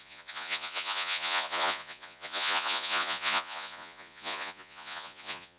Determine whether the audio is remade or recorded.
remade